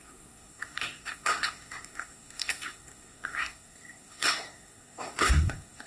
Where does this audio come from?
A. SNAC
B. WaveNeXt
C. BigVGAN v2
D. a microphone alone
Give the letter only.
A